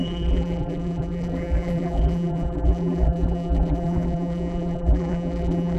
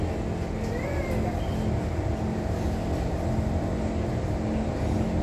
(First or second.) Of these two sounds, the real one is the second